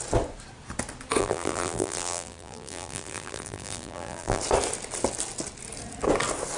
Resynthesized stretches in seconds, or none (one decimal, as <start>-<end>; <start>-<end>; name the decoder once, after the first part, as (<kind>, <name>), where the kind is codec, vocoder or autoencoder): 1.2-4.4 (vocoder, BigVGAN v2)